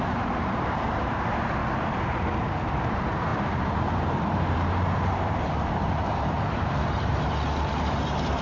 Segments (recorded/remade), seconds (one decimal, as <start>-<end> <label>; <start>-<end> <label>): 0.0-1.6 remade; 1.6-2.7 recorded; 2.7-8.4 remade